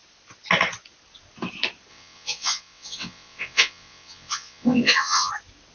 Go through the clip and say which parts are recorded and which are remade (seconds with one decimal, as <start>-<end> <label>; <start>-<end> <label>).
0.0-1.9 recorded; 1.9-5.3 remade; 5.3-5.7 recorded